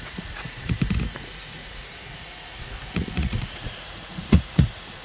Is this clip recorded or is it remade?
remade